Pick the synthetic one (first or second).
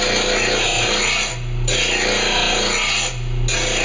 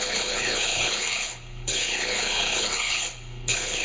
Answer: second